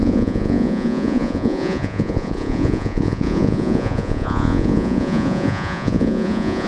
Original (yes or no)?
no